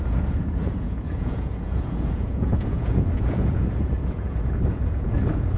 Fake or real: fake